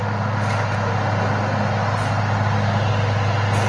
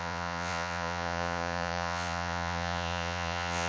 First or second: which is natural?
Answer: first